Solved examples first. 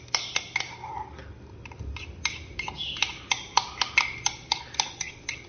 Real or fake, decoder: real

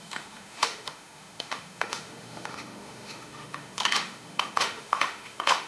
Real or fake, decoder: fake, autoencoder, DAC-VAE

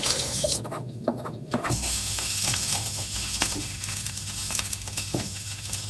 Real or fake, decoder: fake, autoencoder, DAC-VAE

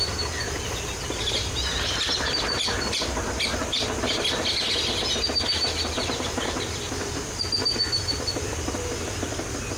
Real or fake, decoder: real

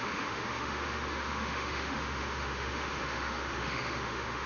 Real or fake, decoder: fake, autoencoder, DAC-VAE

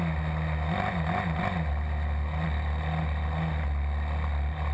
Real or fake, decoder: real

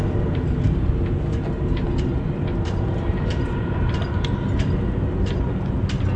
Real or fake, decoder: real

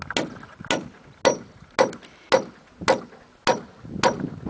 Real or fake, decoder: real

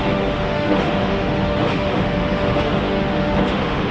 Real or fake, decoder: fake, autoencoder, DAC-VAE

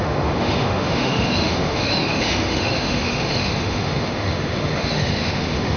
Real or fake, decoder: fake, autoencoder, DAC-VAE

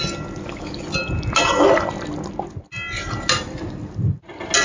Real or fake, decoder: real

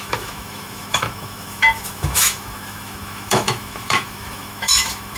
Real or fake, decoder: fake, autoencoder, DAC-VAE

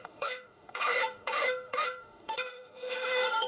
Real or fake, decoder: fake, autoencoder, DAC-VAE